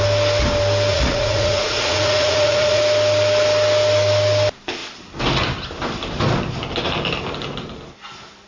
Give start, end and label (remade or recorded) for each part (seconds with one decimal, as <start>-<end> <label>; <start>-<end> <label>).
0.0-0.9 recorded; 0.9-2.8 remade; 2.8-8.5 recorded